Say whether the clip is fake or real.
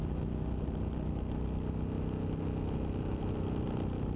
real